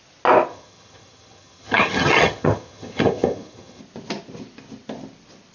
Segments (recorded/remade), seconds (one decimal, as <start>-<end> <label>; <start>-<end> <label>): 0.0-0.5 recorded; 0.5-3.8 remade; 3.8-5.5 recorded